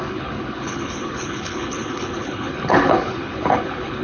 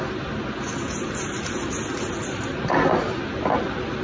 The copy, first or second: first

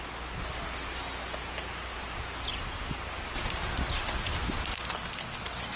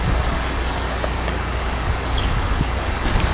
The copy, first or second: second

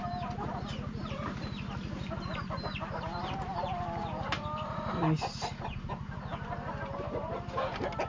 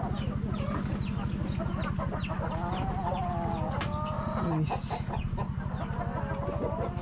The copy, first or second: first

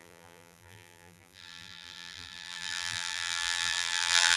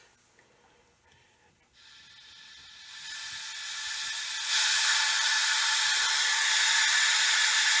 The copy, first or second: first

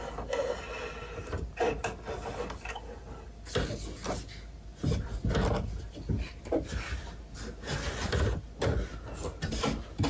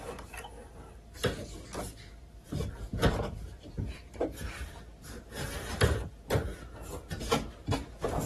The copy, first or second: second